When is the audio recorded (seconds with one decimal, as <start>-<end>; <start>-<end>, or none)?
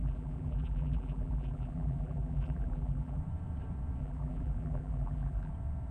3.2-4.0; 5.5-5.9